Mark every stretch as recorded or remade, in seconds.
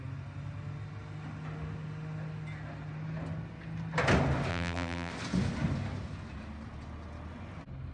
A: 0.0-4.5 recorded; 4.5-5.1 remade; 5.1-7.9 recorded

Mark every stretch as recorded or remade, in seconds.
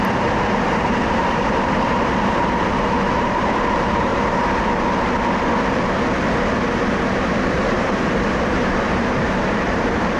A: 0.0-4.1 remade; 4.1-6.9 recorded; 6.9-10.2 remade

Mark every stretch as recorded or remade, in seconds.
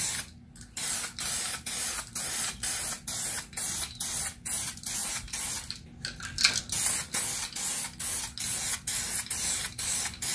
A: 0.0-10.3 recorded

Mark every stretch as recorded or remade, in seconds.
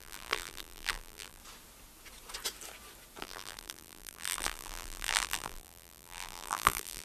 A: 0.0-1.4 remade; 1.4-3.2 recorded; 3.2-7.0 remade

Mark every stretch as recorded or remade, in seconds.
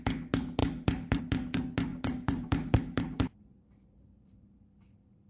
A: 0.0-0.6 recorded; 0.6-1.2 remade; 1.2-1.9 recorded; 1.9-5.3 remade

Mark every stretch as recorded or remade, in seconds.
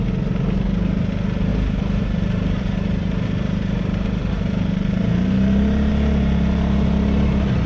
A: 0.0-1.5 recorded; 1.5-5.9 remade; 5.9-7.7 recorded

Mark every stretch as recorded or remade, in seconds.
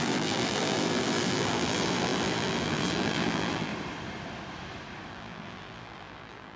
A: 0.0-3.7 remade; 3.7-5.1 recorded; 5.1-6.6 remade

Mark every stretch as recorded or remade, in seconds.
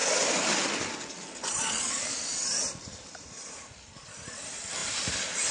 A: 0.0-2.9 recorded; 2.9-5.5 remade